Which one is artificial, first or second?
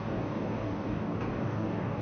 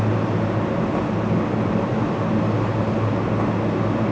first